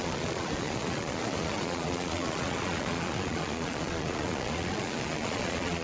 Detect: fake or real fake